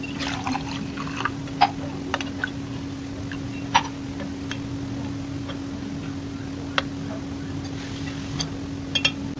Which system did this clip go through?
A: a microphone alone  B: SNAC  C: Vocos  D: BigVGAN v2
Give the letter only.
A